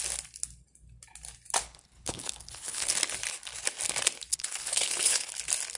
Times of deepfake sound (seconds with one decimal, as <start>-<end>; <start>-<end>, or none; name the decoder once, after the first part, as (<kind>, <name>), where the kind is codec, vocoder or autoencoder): 1.6-2.9 (codec, HILCodec); 4.3-5.3